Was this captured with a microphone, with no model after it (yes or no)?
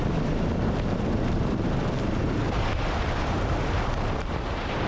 no